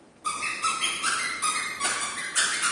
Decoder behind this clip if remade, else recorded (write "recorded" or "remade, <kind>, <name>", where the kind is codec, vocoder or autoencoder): remade, vocoder, BigVGAN v2